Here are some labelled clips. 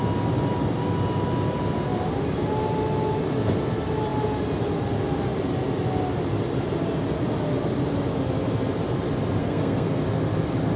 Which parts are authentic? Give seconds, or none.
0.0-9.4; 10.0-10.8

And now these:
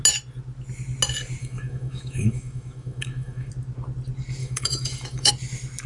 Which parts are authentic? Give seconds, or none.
0.0-1.4; 3.5-4.4; 5.3-5.9

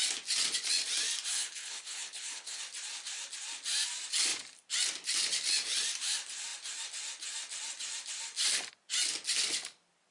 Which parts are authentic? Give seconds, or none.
0.0-1.3; 2.6-10.1

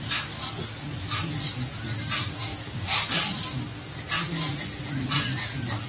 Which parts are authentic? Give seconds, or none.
0.0-5.9

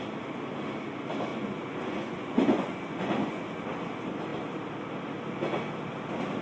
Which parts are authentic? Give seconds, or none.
0.0-1.3; 3.4-6.4

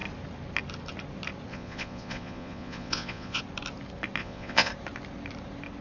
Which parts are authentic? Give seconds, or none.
0.0-1.5; 3.4-4.2; 4.7-5.8